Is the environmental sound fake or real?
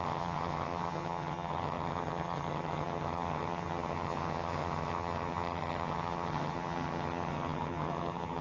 fake